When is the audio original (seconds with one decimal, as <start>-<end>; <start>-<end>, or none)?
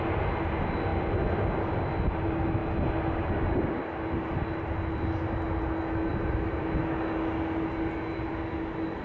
0.0-6.1; 6.8-9.0